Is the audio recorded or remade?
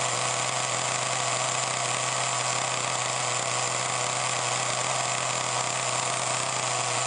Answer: recorded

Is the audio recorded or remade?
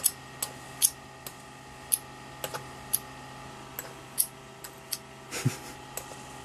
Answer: recorded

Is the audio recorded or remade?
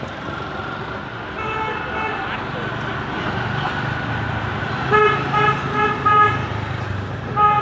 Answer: recorded